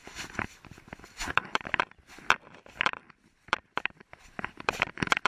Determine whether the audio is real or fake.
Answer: fake